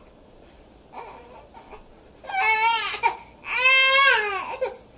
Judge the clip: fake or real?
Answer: real